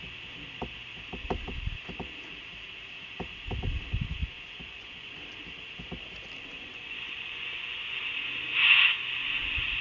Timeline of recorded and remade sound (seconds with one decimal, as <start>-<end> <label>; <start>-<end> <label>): 0.0-4.2 recorded; 4.2-5.2 remade; 5.2-6.5 recorded; 6.5-8.0 remade; 8.0-9.8 recorded